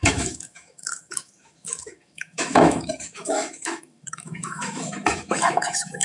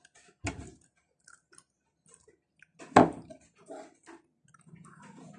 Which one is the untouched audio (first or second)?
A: second